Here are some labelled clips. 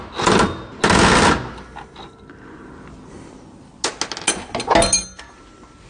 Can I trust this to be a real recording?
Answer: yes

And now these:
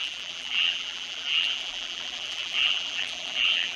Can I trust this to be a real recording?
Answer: no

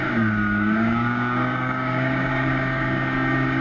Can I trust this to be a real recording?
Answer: no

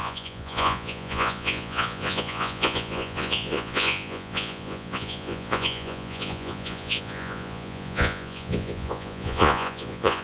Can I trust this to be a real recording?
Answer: no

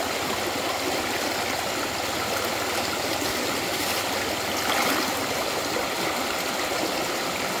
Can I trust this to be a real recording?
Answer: yes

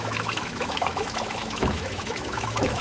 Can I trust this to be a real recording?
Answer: no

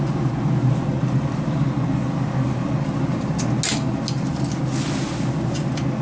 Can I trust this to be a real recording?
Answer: yes